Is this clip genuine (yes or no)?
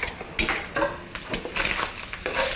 yes